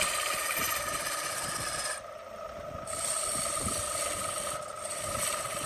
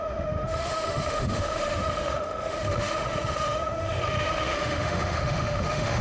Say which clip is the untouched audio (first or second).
first